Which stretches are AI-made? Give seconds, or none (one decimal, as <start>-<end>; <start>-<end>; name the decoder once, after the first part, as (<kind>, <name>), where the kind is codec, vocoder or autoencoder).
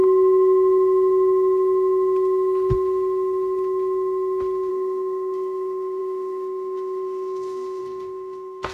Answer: 4.7-8.7 (codec, SNAC)